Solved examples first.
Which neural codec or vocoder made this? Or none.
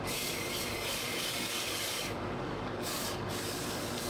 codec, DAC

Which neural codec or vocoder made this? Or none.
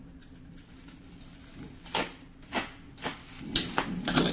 none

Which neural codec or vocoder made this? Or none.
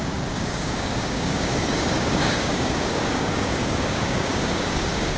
codec, DAC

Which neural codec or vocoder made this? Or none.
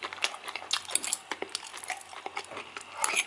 none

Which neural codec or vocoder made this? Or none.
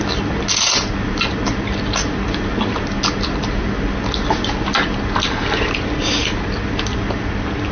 none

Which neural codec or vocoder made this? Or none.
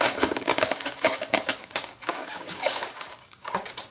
codec, DAC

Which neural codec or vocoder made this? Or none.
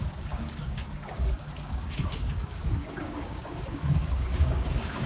codec, DAC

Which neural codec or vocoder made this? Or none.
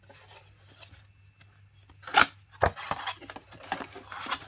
none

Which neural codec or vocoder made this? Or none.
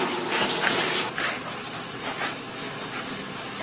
none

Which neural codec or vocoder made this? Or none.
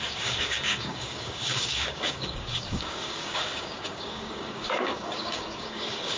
codec, DAC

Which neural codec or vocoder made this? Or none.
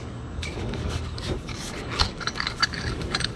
codec, DAC